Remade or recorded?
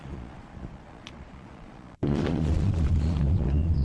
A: remade